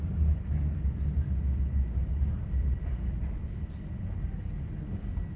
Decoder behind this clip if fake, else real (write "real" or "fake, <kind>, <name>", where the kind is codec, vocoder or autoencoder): real